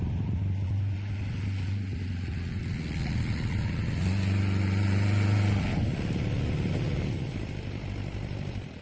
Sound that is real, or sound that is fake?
real